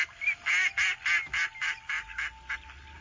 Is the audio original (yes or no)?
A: yes